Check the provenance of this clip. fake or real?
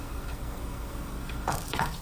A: fake